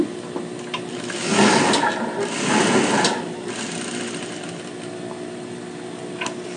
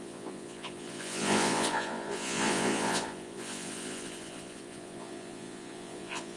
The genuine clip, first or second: first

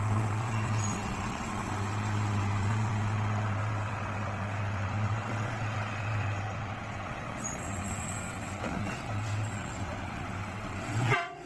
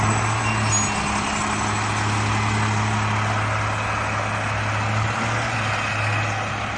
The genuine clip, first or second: second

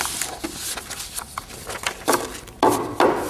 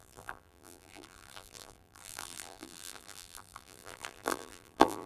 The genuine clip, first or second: first